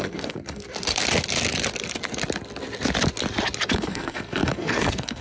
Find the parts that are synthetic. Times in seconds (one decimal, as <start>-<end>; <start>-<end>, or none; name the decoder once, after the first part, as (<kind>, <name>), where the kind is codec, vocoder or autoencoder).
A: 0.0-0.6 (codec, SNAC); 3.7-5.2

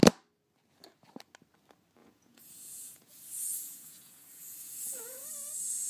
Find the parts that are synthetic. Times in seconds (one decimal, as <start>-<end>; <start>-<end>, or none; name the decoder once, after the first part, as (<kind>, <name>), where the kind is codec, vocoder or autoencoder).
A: 2.0-3.1 (vocoder, Vocos); 3.6-5.3

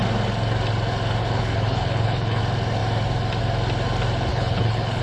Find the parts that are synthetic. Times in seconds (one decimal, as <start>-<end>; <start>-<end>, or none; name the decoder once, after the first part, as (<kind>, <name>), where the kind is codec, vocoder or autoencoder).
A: 1.2-2.4 (codec, HILCodec); 4.3-5.0